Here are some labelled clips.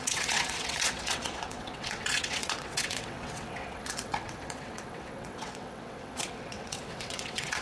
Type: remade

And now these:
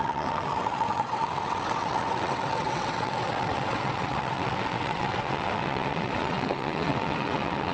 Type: remade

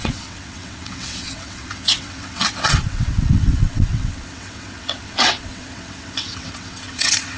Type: remade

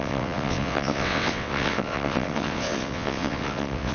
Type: remade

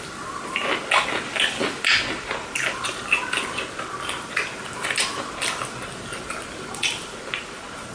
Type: recorded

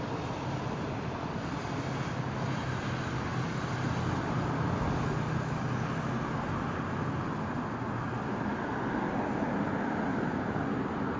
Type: recorded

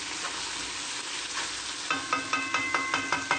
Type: recorded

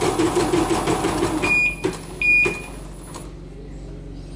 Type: recorded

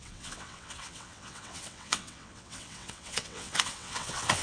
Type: remade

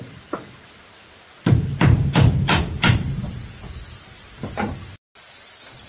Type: recorded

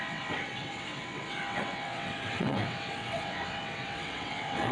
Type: remade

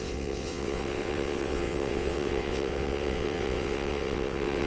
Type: remade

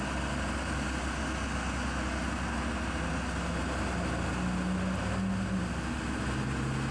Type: recorded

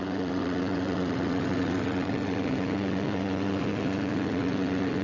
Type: remade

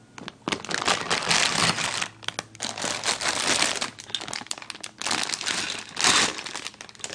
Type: recorded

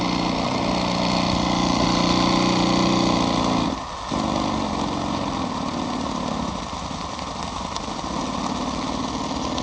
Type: recorded